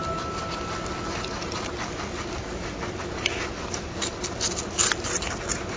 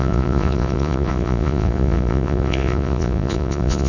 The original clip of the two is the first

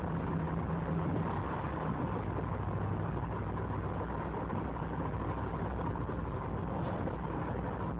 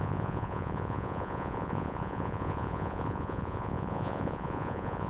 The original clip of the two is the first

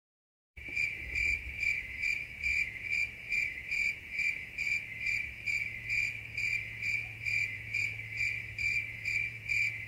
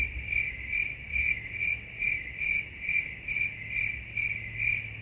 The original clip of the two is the second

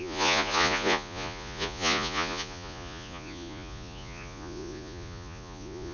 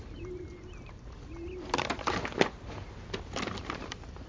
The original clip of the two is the second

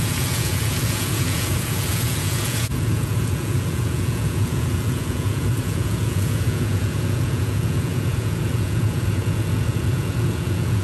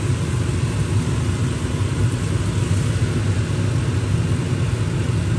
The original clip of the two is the second